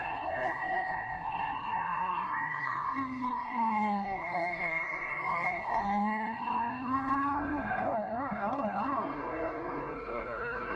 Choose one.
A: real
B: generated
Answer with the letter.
B